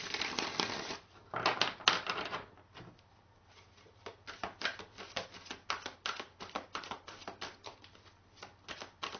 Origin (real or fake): real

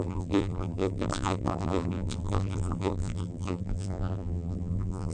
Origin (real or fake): fake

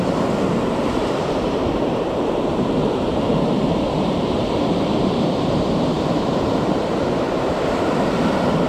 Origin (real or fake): fake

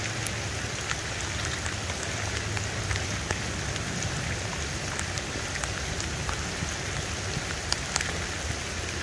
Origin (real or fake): real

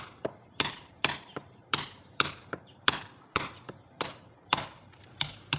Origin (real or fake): fake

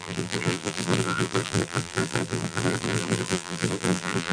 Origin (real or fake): fake